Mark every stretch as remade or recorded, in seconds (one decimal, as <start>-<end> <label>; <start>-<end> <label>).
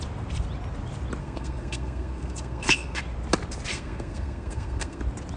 0.0-1.2 recorded; 1.2-3.0 remade; 3.0-3.7 recorded; 3.7-5.0 remade; 5.0-5.4 recorded